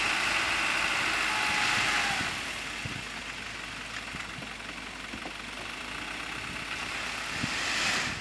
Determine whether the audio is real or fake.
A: real